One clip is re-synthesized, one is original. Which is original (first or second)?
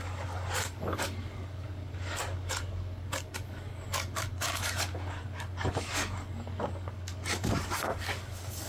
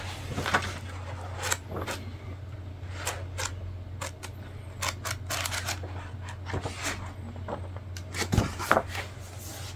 second